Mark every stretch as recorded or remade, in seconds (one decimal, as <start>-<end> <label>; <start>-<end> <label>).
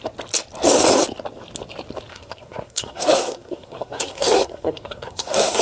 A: 0.0-2.1 recorded; 2.1-5.6 remade